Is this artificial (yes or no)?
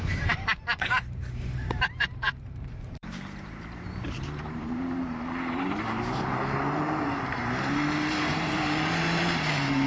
yes